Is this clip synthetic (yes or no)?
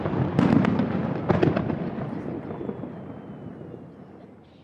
yes